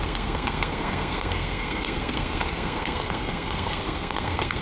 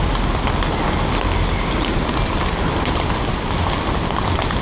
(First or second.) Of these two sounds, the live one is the second